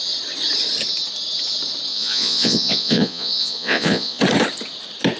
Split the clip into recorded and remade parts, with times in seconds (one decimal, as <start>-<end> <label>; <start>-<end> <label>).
0.0-1.9 recorded; 1.9-4.2 remade; 4.2-5.2 recorded